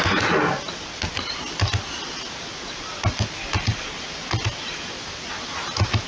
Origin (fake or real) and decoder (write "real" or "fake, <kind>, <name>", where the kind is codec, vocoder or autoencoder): real